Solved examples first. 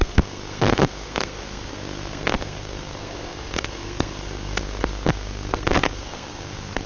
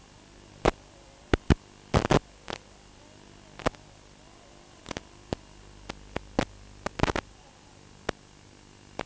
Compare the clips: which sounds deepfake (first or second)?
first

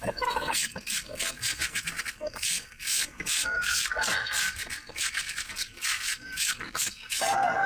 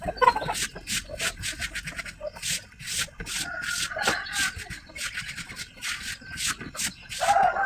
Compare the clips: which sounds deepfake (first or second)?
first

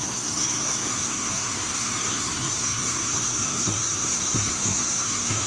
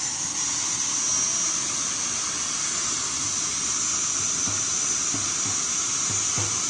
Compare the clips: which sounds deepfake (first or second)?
first